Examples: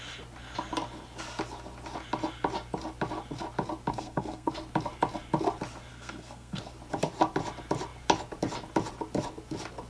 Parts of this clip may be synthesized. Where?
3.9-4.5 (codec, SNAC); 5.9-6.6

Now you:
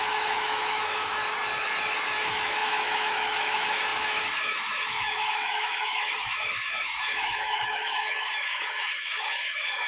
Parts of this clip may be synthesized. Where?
0.0-1.2 (autoencoder, DAC-VAE); 2.2-9.9